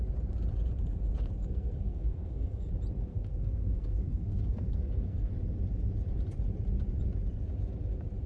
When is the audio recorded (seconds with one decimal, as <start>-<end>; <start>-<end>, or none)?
0.0-1.4; 2.7-3.1; 5.3-8.3